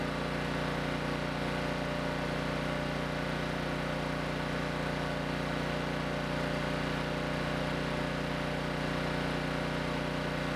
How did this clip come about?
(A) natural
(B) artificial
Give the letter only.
A